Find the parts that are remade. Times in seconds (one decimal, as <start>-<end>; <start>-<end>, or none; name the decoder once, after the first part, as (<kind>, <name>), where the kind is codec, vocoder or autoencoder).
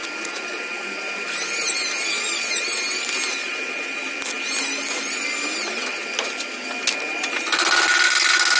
none